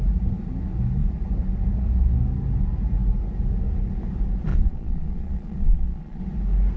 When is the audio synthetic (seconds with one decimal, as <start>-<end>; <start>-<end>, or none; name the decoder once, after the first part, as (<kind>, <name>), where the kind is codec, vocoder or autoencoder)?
4.5-6.2 (vocoder, Vocos)